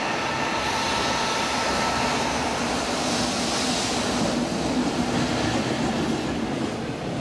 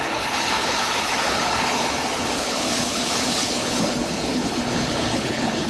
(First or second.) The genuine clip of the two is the first